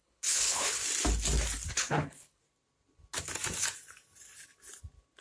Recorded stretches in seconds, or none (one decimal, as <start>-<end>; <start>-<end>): 0.8-1.7; 2.4-5.2

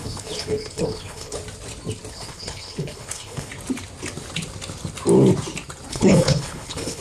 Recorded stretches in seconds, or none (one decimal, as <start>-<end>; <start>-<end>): 1.4-2.1; 3.5-5.9

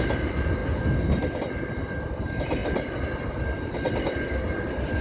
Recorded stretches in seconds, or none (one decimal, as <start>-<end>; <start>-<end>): 0.0-5.0

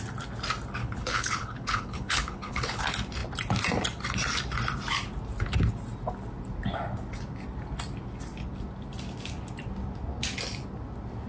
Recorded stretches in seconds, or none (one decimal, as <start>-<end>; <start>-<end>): 0.0-0.8; 2.8-11.3

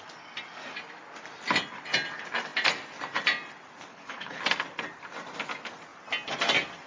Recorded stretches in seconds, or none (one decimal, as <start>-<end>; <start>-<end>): 0.0-3.9; 4.4-6.9

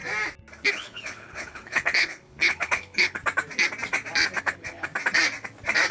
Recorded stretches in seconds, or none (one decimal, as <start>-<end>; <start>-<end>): 0.0-0.7; 3.2-4.4; 4.9-5.9

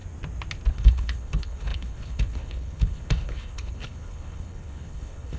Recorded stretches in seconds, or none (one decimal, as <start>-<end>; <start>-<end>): 0.0-0.7

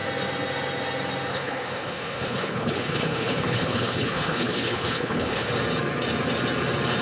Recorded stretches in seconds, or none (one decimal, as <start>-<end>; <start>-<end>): 0.0-1.3; 5.5-7.0